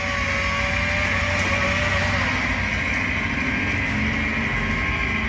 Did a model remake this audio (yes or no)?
no